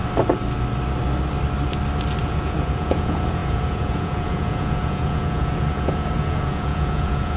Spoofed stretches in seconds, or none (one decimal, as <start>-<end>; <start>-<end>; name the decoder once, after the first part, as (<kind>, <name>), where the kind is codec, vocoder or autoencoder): 2.2-7.4 (vocoder, Vocos)